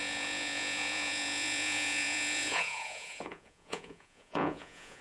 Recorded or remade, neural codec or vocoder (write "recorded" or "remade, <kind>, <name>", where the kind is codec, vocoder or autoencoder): remade, vocoder, Vocos